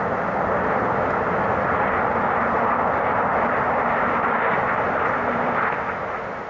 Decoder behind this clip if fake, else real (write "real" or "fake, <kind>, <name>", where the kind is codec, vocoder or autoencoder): real